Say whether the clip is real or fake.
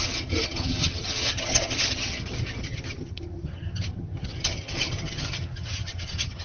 fake